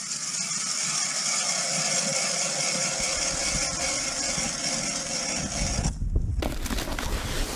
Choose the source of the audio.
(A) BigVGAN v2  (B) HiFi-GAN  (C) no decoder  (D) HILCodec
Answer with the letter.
C